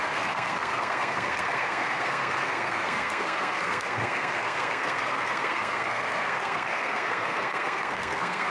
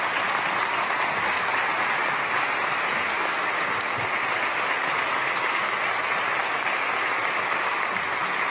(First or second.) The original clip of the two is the second